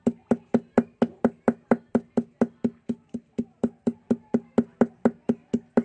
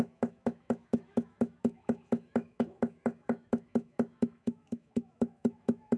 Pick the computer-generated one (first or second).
second